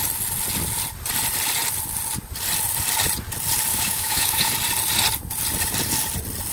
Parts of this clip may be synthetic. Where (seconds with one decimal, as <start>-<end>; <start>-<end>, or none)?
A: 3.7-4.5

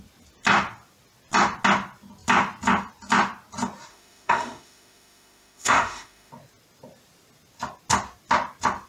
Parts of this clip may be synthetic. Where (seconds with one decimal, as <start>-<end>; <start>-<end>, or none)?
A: 3.9-6.3

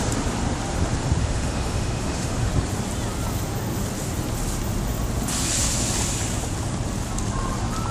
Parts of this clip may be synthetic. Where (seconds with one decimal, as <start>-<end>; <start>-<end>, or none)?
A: 1.2-2.5